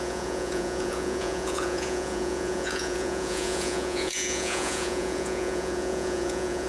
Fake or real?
fake